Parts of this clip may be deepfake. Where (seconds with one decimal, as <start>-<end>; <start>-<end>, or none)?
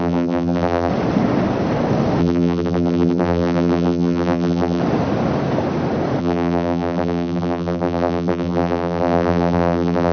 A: 0.0-0.9; 2.2-4.8; 6.2-10.1